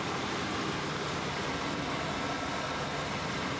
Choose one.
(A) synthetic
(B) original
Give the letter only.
B